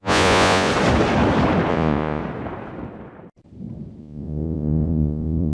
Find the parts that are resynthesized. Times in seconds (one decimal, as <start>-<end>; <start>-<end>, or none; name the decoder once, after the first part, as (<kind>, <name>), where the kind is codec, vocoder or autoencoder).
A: 0.0-0.7 (vocoder, Vocos); 1.7-2.2; 4.0-5.5